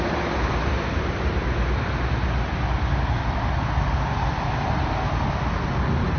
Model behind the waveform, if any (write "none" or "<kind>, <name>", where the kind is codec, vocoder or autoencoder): none